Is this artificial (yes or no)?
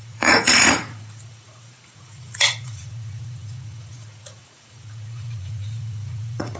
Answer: yes